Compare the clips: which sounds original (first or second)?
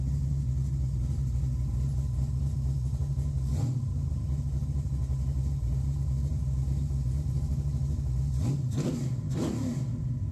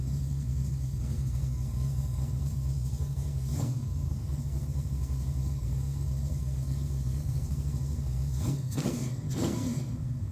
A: first